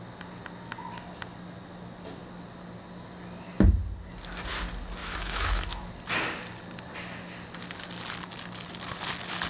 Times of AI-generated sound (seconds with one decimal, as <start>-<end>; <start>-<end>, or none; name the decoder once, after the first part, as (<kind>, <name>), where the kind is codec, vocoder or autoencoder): 5.0-5.9 (autoencoder, DAC-VAE)